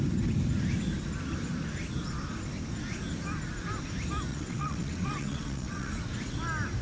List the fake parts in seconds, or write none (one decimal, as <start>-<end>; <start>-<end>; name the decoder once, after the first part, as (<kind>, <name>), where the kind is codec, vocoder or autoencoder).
4.3-5.9 (vocoder, WaveNeXt)